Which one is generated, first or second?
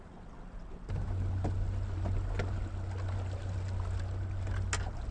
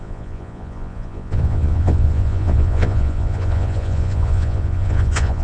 second